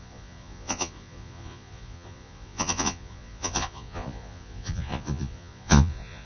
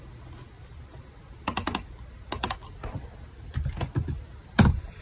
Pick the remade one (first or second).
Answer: first